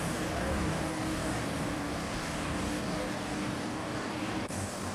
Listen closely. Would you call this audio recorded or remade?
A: remade